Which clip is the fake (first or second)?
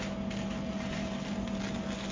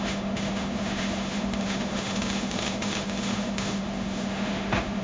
second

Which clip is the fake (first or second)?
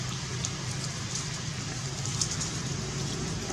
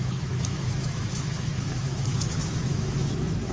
second